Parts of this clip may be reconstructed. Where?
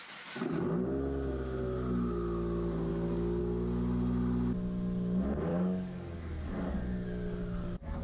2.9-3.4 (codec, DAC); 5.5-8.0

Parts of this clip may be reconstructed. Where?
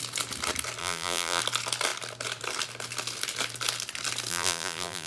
0.8-1.4 (vocoder, BigVGAN v2); 4.3-5.1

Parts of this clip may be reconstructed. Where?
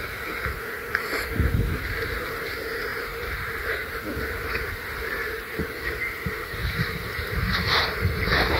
2.9-3.9 (vocoder, BigVGAN v2); 4.4-6.0; 6.6-7.8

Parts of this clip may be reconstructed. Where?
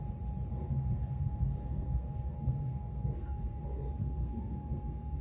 0.5-3.6 (codec, SNAC); 4.0-5.2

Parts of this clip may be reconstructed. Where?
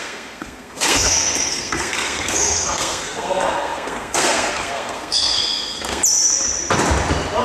0.0-6.0 (codec, SNAC)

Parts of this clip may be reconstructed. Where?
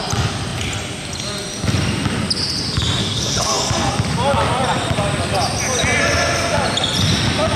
3.0-3.9 (codec, SNAC)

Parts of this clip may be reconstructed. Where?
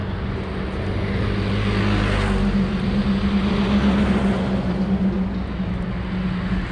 none